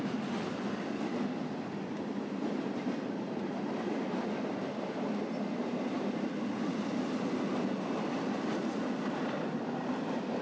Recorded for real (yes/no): yes